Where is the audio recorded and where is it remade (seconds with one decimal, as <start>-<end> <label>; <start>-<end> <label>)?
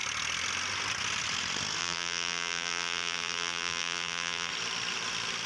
0.0-1.8 recorded; 1.8-4.5 remade; 4.5-5.5 recorded